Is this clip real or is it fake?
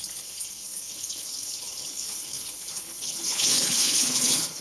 fake